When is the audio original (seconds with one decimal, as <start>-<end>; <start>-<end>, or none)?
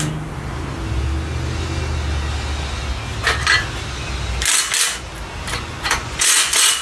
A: 0.0-5.5